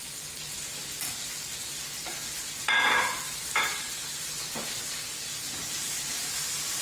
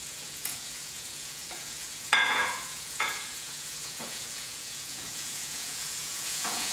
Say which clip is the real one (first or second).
first